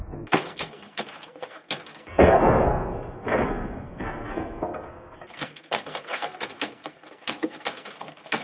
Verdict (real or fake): fake